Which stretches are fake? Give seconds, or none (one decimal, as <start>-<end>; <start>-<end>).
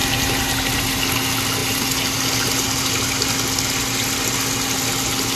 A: none